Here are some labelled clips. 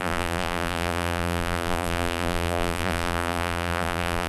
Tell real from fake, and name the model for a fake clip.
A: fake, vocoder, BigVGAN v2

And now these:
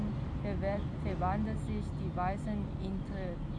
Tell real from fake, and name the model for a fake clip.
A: real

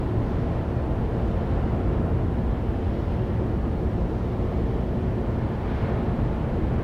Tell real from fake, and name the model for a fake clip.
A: real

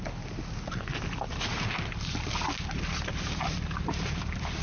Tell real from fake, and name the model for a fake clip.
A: real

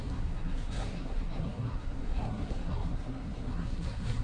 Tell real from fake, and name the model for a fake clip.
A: fake, codec, SNAC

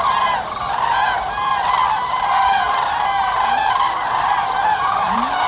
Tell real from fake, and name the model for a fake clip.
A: real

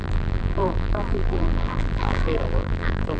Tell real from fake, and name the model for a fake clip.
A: fake, vocoder, BigVGAN v2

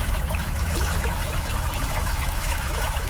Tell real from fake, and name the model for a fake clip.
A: fake, autoencoder, DAC-VAE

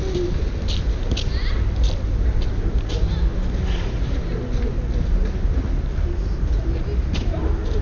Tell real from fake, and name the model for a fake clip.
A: real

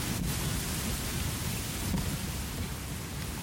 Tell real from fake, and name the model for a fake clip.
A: real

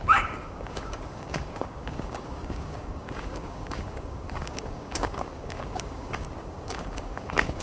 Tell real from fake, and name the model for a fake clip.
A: fake, codec, DAC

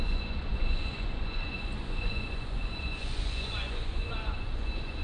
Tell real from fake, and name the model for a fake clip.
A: fake, vocoder, Vocos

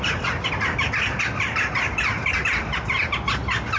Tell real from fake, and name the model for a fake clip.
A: real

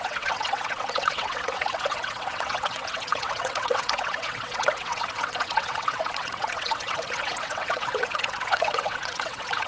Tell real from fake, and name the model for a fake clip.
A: fake, vocoder, WaveNeXt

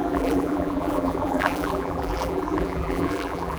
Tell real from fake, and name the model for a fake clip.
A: fake, vocoder, BigVGAN v2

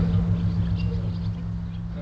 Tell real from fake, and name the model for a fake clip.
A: real